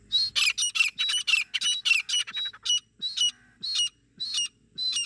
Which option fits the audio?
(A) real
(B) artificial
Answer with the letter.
A